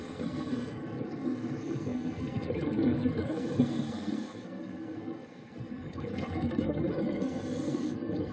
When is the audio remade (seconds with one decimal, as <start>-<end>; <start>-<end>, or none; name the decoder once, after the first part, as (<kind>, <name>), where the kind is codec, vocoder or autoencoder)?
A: 0.0-8.3 (codec, SNAC)